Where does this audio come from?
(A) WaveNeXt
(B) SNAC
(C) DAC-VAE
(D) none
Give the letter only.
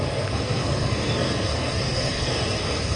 B